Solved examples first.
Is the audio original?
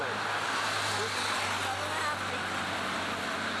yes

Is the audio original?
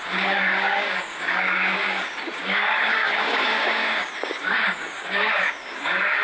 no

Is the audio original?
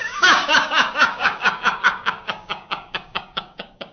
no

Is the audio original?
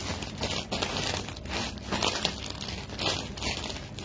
yes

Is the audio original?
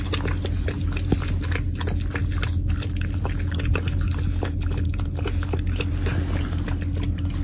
yes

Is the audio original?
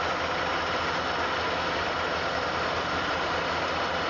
yes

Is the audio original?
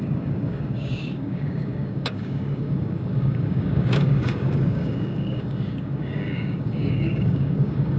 no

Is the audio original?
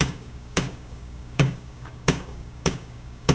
no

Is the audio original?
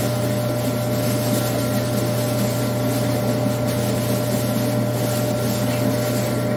yes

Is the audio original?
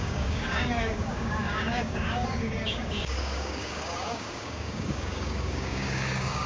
no